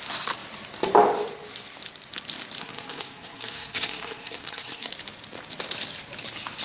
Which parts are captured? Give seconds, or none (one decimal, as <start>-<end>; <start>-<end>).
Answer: 0.0-2.6; 4.9-6.6